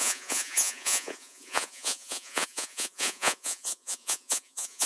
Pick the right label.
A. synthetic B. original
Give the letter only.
A